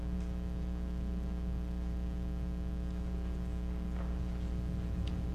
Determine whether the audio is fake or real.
real